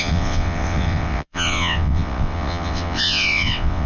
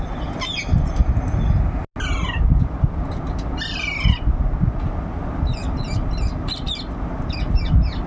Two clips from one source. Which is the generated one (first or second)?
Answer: first